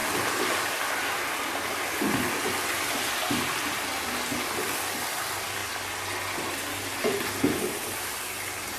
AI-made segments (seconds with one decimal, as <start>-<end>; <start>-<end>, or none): none